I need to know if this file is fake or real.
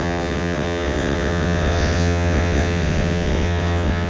fake